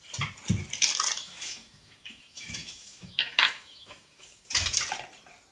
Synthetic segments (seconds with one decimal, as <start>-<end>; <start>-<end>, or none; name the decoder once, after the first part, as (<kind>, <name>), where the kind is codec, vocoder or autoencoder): 1.2-4.5 (autoencoder, DAC-VAE)